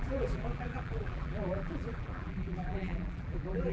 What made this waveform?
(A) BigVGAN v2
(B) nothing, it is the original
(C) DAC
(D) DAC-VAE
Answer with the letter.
A